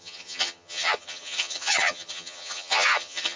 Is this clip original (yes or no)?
no